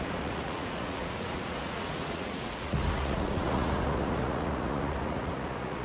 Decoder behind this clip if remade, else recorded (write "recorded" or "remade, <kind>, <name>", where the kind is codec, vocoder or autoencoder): remade, vocoder, Vocos